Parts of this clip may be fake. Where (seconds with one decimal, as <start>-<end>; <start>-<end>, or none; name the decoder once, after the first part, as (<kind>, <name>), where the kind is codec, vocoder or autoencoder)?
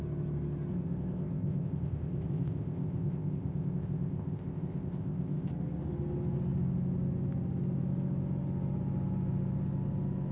0.7-5.5 (codec, ZipCodec)